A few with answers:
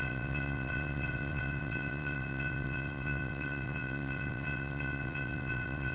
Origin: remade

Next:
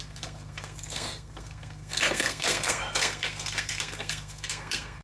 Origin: remade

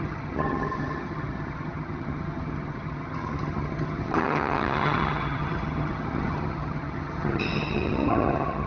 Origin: remade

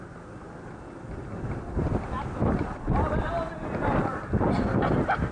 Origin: recorded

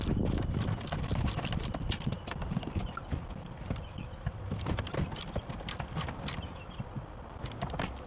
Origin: recorded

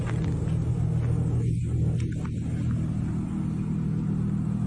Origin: recorded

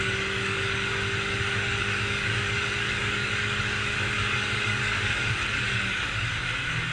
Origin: remade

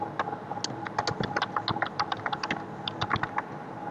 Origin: recorded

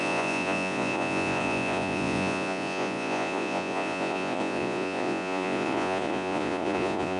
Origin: remade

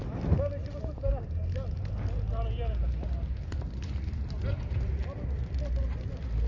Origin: recorded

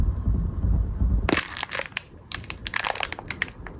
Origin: remade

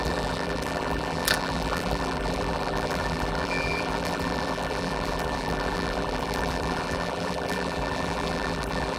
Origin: remade